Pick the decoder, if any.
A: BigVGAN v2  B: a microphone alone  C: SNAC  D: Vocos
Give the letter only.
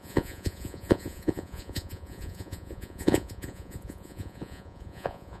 D